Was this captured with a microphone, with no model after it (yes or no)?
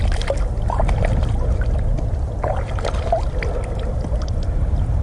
yes